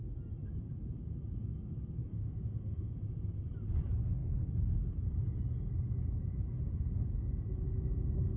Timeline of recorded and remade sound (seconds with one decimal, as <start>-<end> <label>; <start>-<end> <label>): 0.0-2.1 recorded; 2.1-2.9 remade; 2.9-8.4 recorded